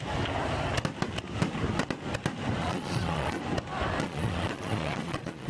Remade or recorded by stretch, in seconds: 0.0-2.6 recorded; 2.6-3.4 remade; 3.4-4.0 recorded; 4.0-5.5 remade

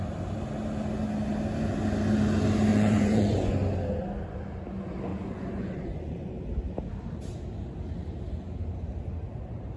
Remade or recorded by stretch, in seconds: 0.0-2.7 recorded; 2.7-3.5 remade; 3.5-5.1 recorded; 5.1-6.3 remade; 6.3-9.8 recorded